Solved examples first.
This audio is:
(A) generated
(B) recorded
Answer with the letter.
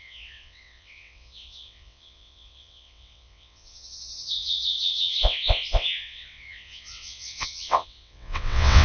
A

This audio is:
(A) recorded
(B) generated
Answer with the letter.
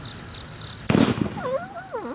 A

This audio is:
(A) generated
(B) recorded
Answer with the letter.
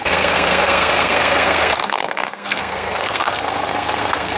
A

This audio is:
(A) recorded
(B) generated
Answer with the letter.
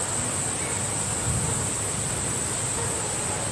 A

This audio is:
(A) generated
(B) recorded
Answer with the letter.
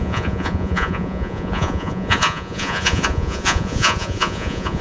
A